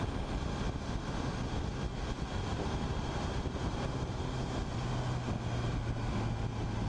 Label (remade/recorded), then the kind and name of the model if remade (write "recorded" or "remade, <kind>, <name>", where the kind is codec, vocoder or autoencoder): recorded